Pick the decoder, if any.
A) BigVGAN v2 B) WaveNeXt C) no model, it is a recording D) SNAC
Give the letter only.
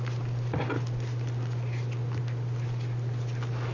C